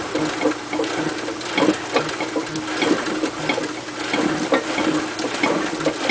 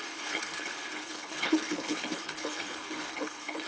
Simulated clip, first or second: second